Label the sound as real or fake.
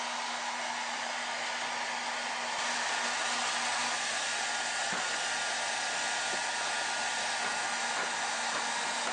real